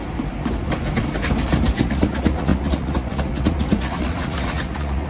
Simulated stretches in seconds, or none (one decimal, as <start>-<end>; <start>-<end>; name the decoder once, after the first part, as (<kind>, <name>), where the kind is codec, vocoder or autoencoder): 1.8-5.1 (vocoder, Vocos)